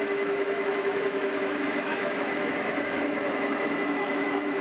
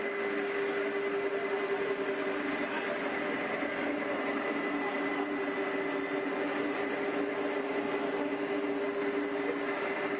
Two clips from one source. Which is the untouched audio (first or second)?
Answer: second